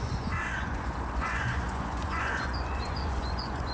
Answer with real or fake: fake